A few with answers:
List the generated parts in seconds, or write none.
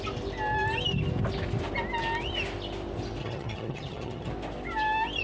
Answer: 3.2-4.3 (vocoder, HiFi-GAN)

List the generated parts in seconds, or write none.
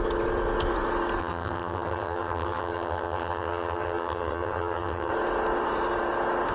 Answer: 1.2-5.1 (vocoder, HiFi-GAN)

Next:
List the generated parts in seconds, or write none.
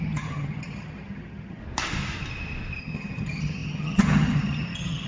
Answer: 0.0-1.6 (vocoder, HiFi-GAN); 2.8-5.1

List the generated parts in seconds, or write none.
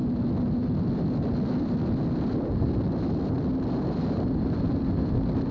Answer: none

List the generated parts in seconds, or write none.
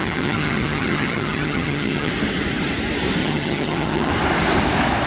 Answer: 0.0-2.1 (vocoder, HiFi-GAN); 3.2-4.1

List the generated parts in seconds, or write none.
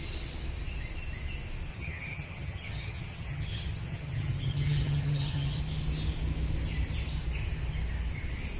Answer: 1.7-5.6 (vocoder, HiFi-GAN)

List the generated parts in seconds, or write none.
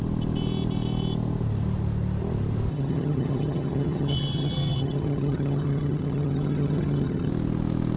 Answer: 2.7-7.3 (vocoder, HiFi-GAN)